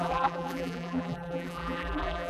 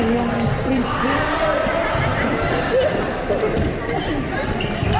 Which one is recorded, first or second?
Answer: second